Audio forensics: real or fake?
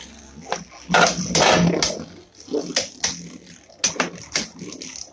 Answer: real